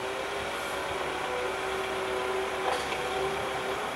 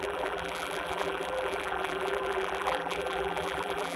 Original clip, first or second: first